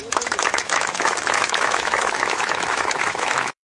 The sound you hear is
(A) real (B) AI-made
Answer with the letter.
B